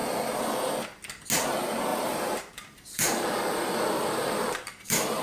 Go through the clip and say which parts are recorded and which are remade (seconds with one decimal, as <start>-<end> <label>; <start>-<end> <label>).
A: 0.0-1.9 recorded; 1.9-5.2 remade